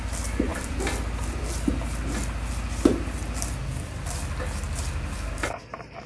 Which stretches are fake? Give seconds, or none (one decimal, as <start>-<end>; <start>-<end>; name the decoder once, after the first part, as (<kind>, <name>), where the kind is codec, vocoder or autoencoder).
0.5-1.5 (vocoder, BigVGAN v2)